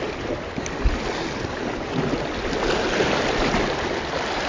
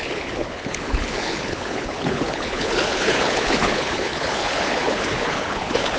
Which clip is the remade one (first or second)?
second